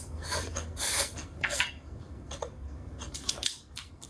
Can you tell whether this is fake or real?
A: fake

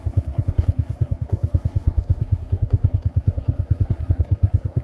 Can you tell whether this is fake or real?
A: fake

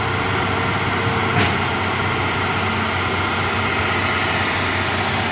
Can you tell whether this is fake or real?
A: real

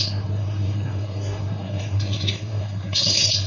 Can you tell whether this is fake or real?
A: fake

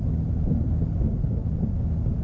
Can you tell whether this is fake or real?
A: real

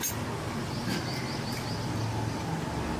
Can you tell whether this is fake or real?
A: real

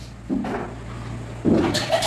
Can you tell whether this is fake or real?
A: real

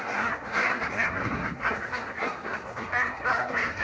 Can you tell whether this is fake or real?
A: fake